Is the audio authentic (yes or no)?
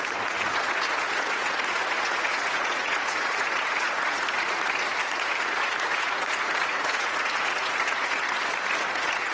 no